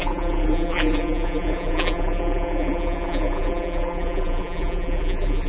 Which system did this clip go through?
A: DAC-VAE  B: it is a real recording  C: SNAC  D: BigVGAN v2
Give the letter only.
D